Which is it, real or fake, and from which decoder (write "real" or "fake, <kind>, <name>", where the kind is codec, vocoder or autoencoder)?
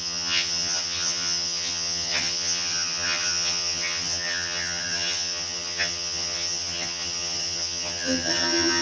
fake, vocoder, HiFi-GAN